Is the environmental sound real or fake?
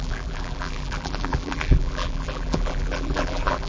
fake